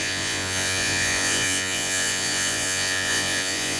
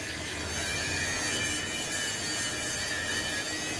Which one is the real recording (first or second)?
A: second